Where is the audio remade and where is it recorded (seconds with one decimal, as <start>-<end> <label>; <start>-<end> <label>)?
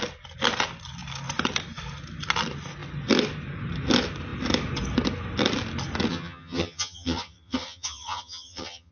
0.0-6.1 recorded; 6.1-8.9 remade